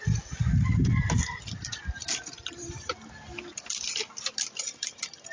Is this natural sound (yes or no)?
yes